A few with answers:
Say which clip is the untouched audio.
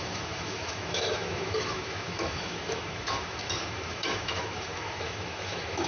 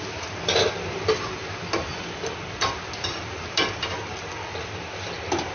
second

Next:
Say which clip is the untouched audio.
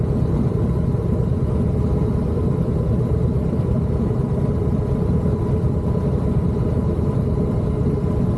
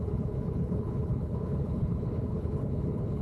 first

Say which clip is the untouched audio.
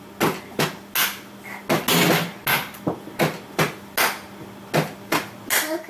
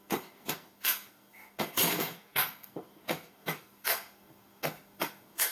first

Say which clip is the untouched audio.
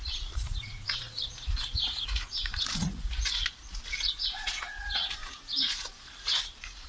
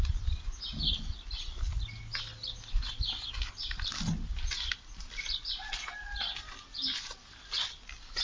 second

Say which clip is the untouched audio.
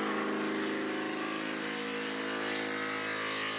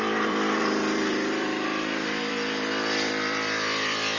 first